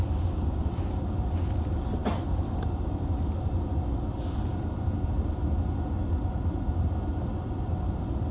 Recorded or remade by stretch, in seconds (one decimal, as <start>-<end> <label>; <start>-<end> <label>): 0.0-8.3 recorded